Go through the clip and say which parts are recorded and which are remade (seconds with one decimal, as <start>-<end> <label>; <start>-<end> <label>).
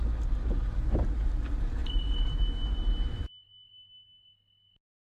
0.0-5.1 recorded